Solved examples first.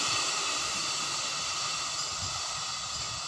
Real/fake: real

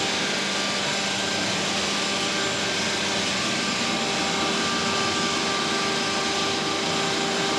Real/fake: real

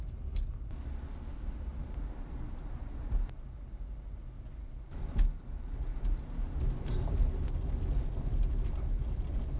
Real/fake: real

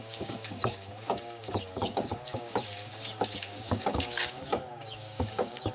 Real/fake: fake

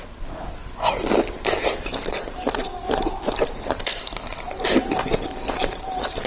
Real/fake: fake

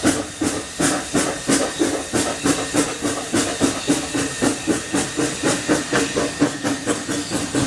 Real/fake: real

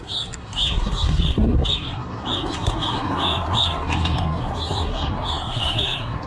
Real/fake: fake